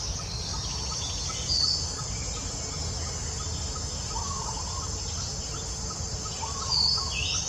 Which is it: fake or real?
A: real